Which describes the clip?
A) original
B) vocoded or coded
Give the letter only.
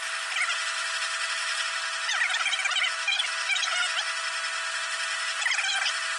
A